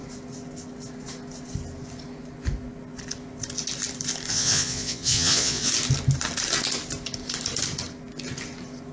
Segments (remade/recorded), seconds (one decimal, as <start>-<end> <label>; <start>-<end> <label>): 0.0-4.3 recorded; 4.3-5.7 remade; 5.7-8.9 recorded